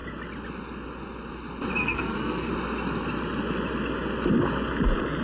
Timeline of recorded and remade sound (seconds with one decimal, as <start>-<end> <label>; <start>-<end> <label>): 0.0-1.8 recorded; 1.8-2.5 remade; 2.5-5.2 recorded